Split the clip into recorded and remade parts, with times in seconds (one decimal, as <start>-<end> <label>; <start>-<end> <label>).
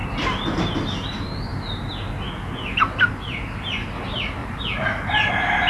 0.0-0.6 remade; 0.6-4.4 recorded; 4.4-5.3 remade; 5.3-5.7 recorded